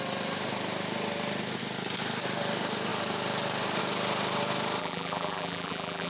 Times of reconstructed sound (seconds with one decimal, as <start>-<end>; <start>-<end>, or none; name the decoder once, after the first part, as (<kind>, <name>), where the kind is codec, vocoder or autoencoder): 4.8-6.1 (vocoder, BigVGAN v2)